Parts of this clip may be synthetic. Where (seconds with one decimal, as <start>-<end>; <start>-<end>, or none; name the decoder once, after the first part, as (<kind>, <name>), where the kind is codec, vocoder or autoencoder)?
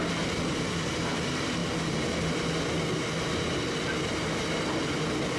none